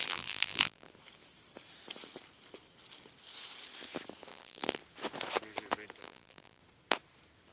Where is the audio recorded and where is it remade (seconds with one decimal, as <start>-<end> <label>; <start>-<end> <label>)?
0.0-0.9 remade; 0.9-4.3 recorded; 4.3-4.8 remade; 4.8-6.0 recorded; 6.0-6.6 remade; 6.6-7.5 recorded